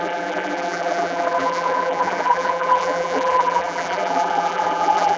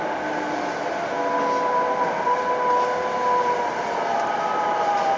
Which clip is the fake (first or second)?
first